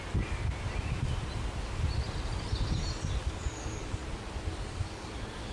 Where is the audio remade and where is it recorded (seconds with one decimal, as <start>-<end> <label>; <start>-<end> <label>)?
0.0-3.2 recorded; 3.2-4.0 remade; 4.0-4.7 recorded; 4.7-5.5 remade